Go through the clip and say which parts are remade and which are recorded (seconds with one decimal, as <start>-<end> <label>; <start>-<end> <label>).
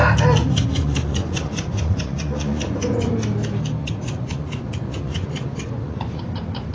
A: 0.0-0.4 recorded; 0.4-3.1 remade; 3.1-3.8 recorded; 3.8-6.2 remade; 6.2-6.7 recorded